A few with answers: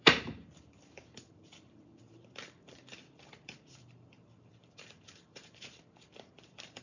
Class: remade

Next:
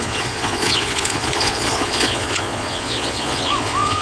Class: remade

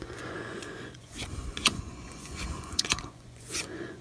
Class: remade